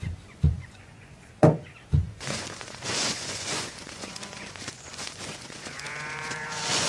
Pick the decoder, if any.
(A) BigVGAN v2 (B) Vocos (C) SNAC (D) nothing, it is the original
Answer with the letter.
B